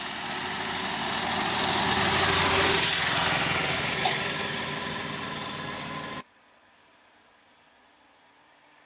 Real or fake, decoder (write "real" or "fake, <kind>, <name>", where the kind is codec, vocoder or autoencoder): real